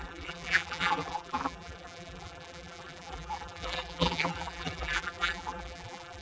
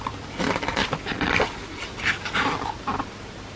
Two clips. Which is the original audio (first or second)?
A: second